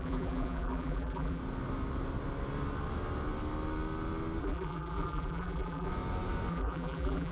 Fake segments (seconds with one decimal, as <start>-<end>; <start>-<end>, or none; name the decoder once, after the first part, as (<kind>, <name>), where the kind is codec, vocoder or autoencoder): 0.0-1.4 (vocoder, BigVGAN v2); 4.4-5.9; 6.5-7.3